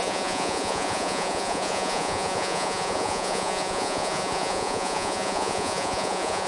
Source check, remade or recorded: remade